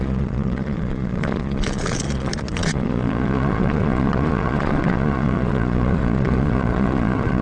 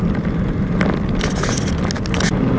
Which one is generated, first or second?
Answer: first